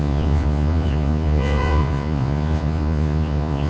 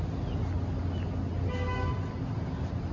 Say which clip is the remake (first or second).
first